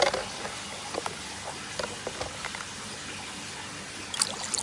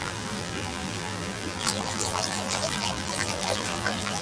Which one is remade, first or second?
second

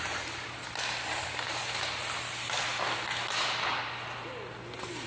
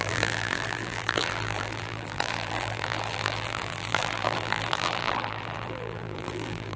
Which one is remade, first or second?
second